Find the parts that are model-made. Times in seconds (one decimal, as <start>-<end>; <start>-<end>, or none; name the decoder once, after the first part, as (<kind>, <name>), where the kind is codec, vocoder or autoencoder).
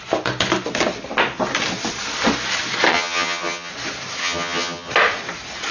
2.9-3.7 (vocoder, HiFi-GAN); 4.2-4.9